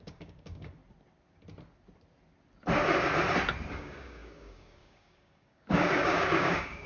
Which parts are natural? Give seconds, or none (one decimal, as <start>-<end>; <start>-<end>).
0.8-3.7